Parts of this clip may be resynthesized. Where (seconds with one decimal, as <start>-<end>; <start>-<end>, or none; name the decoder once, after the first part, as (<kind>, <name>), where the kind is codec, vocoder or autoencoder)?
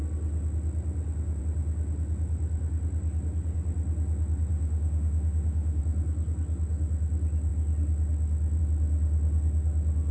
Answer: 4.5-5.8 (autoencoder, DAC-VAE)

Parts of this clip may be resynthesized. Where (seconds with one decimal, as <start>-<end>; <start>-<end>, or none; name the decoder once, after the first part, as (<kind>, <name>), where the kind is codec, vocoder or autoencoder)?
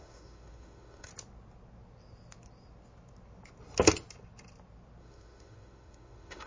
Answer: 0.0-1.1 (autoencoder, DAC-VAE); 5.0-6.5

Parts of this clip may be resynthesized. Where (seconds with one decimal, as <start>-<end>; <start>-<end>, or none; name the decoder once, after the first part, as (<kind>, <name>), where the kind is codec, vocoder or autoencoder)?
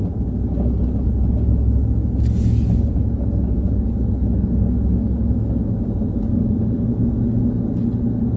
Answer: none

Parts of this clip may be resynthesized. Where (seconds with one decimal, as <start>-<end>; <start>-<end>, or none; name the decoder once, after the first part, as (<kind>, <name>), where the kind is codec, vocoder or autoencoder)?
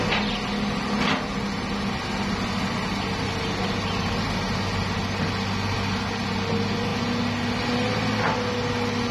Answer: none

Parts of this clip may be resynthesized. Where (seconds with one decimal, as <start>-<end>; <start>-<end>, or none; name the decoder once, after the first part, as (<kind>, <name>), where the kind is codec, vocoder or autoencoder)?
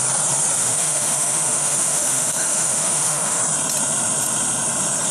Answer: 0.6-3.4 (autoencoder, DAC-VAE)